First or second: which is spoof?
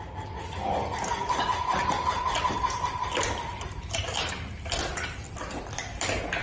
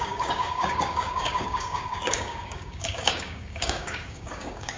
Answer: second